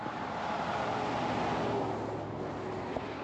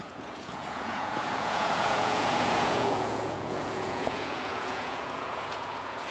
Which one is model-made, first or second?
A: second